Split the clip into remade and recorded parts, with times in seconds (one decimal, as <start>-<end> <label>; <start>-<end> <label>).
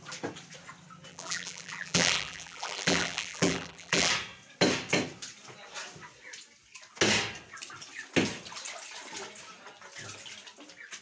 0.0-1.1 recorded; 1.1-4.1 remade; 4.1-11.0 recorded